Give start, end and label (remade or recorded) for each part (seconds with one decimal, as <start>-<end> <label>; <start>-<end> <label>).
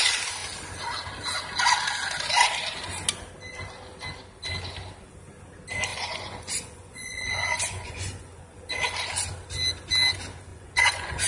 0.0-5.9 recorded; 5.9-8.6 remade; 8.6-10.5 recorded; 10.5-11.3 remade